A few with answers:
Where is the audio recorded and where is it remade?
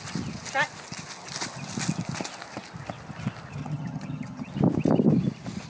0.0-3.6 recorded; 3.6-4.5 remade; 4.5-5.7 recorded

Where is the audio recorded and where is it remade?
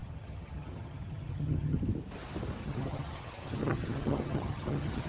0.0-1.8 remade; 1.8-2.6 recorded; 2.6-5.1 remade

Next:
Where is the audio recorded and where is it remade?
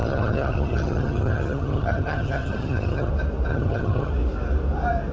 0.0-3.1 remade; 3.1-3.5 recorded; 3.5-4.1 remade; 4.1-5.1 recorded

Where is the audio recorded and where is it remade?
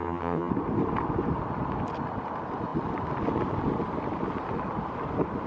0.0-0.5 remade; 0.5-5.5 recorded